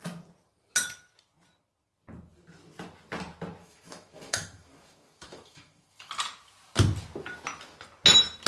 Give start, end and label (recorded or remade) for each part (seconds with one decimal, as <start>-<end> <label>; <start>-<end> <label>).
0.0-3.6 recorded; 3.6-6.1 remade; 6.1-8.5 recorded